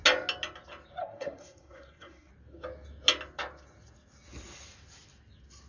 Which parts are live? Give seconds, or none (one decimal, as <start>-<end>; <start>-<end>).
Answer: 0.0-1.0; 2.3-5.7